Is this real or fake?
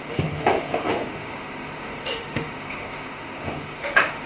fake